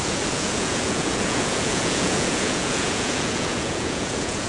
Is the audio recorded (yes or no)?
no